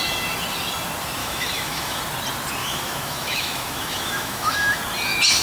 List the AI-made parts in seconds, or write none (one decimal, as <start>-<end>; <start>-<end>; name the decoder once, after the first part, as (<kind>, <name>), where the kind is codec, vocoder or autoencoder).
1.2-2.0 (autoencoder, DAC-VAE); 2.6-4.8